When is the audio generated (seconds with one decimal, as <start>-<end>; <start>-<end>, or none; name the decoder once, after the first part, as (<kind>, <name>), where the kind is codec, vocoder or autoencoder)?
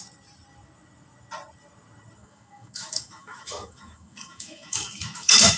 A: 2.2-5.6 (autoencoder, DAC-VAE)